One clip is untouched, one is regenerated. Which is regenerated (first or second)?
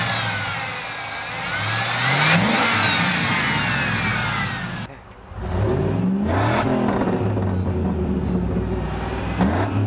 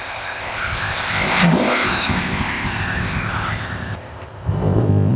second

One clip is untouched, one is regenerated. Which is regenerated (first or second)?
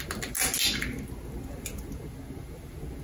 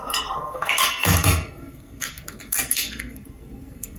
second